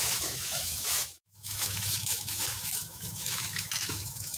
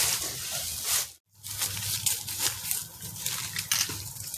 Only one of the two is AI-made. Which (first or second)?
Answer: first